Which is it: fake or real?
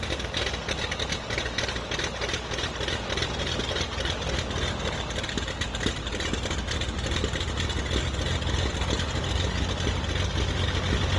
real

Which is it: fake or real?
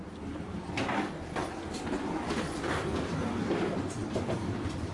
real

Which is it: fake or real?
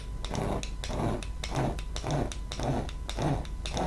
real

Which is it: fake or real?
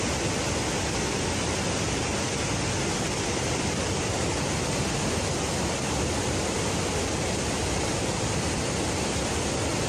real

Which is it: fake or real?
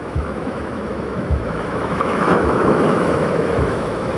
fake